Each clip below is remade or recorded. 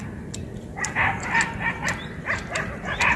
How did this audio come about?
recorded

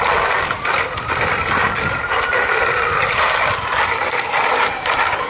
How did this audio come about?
recorded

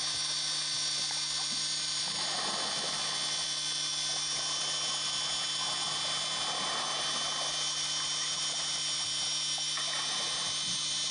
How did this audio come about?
remade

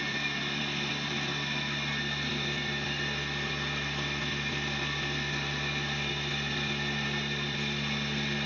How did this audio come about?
recorded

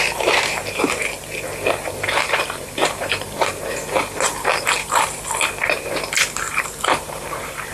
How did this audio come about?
remade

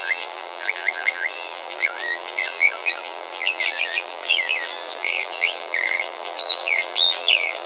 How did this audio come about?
remade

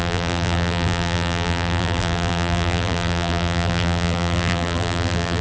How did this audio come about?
remade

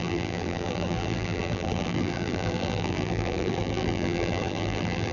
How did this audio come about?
remade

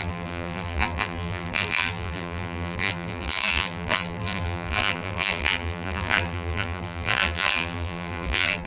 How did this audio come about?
remade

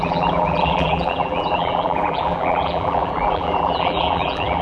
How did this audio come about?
remade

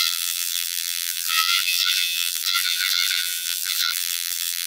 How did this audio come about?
remade